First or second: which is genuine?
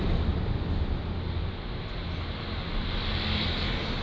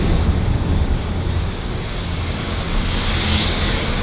first